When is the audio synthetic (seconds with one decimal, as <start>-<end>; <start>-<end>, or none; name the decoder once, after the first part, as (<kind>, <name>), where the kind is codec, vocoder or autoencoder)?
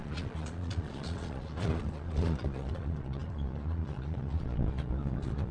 0.0-5.5 (vocoder, Vocos)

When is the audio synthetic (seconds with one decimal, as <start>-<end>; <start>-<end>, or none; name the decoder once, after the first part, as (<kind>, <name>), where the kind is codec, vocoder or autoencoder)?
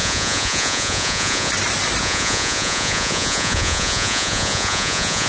0.0-1.5 (vocoder, Vocos); 2.0-5.3